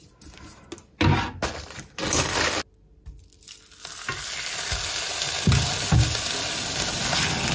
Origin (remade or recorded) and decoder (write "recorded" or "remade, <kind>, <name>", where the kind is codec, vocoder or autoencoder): recorded